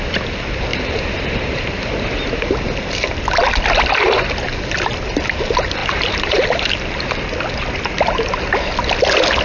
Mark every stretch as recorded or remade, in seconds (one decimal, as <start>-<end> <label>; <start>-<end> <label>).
0.0-0.7 recorded; 0.7-1.7 remade; 1.7-5.8 recorded; 5.8-7.0 remade; 7.0-9.4 recorded